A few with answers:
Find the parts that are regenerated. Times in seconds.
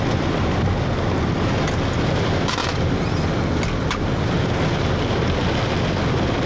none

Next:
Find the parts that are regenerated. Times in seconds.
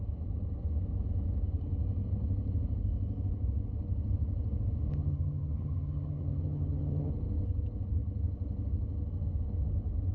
4.9-7.1 (vocoder, HiFi-GAN)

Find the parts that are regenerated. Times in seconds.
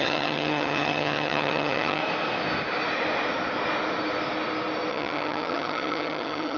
0.0-2.0 (vocoder, HiFi-GAN); 4.9-6.6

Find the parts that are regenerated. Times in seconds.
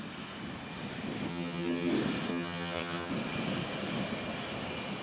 1.3-1.9 (vocoder, HiFi-GAN); 2.3-3.1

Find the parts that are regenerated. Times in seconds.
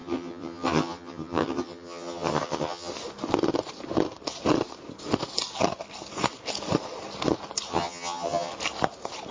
0.0-2.9 (vocoder, HiFi-GAN); 7.7-8.5